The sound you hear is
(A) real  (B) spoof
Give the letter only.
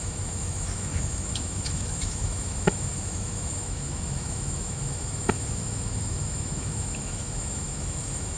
B